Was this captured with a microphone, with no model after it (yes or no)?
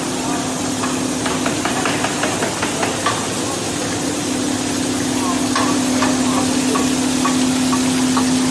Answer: yes